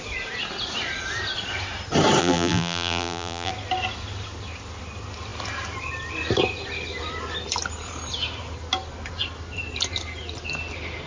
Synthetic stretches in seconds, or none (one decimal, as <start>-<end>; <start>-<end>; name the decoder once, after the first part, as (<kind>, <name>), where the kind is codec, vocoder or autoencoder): 2.2-3.5 (vocoder, BigVGAN v2)